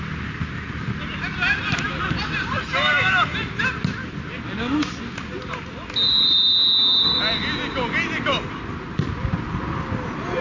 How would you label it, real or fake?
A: real